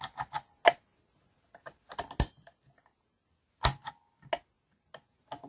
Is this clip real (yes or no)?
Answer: yes